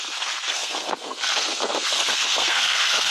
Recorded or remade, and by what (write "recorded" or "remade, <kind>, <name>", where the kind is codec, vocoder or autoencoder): remade, codec, SNAC